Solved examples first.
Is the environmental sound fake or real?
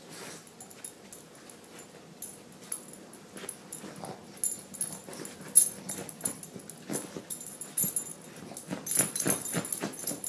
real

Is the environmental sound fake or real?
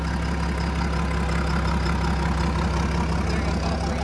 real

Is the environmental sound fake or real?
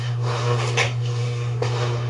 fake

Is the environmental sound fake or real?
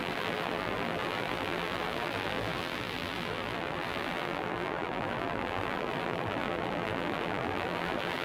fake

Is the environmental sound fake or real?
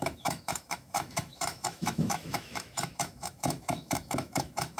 fake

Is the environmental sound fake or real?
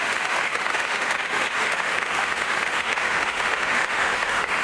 fake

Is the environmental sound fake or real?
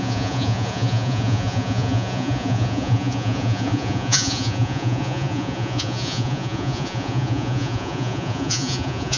fake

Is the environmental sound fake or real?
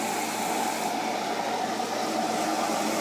real